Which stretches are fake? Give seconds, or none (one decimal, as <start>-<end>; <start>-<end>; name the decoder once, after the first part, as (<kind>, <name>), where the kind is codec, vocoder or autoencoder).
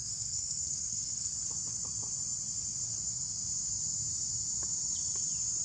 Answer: 0.0-1.3 (codec, SNAC)